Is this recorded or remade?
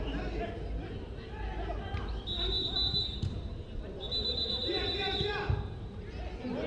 recorded